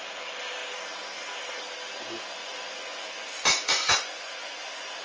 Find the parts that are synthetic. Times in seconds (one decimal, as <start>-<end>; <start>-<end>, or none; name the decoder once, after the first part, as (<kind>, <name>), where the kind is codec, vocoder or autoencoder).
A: 2.4-5.0 (vocoder, Vocos)